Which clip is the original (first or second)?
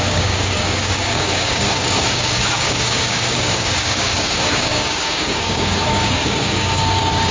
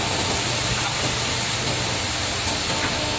second